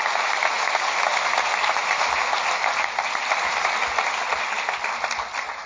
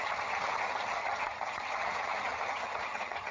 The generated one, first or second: second